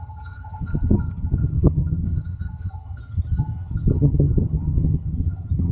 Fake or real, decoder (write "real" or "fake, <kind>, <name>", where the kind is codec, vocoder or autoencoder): fake, vocoder, HiFi-GAN